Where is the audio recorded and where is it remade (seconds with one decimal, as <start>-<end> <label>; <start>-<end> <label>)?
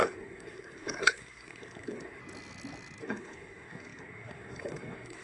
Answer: 0.0-2.2 remade; 2.2-3.0 recorded; 3.0-5.2 remade